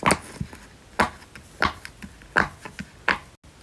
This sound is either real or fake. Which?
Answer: real